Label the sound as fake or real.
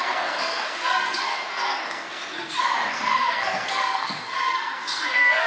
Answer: fake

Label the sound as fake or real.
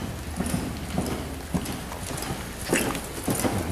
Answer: real